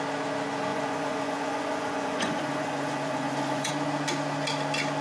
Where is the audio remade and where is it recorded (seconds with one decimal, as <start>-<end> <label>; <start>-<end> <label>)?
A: 0.0-0.7 recorded; 0.7-3.7 remade; 3.7-5.0 recorded